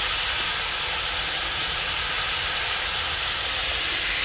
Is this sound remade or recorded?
recorded